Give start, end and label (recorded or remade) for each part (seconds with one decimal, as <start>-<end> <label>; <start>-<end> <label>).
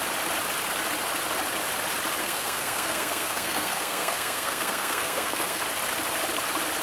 0.0-2.2 recorded; 2.2-5.6 remade; 5.6-6.8 recorded